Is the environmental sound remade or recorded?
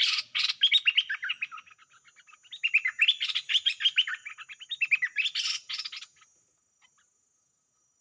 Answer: recorded